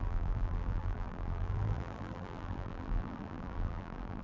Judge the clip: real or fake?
fake